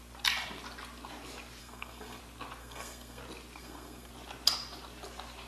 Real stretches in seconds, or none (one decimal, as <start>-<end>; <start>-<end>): 0.0-1.6; 2.2-2.6; 3.2-3.6; 4.1-5.5

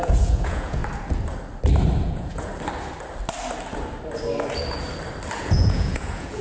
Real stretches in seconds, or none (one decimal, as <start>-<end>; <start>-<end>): 0.8-2.0; 2.5-5.4

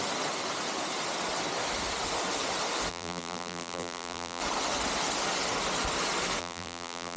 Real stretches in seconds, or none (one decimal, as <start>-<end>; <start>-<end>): 0.0-2.9; 4.4-6.4

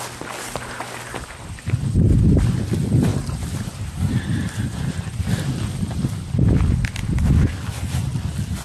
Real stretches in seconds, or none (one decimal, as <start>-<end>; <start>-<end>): 0.0-3.1; 5.4-8.6

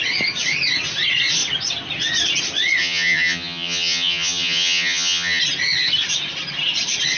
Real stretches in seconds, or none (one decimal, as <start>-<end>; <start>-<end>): 0.0-2.8; 5.4-7.2

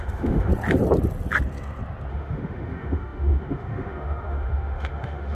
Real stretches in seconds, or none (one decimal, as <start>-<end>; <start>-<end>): 0.5-2.1